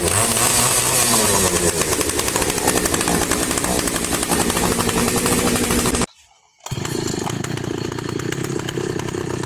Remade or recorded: recorded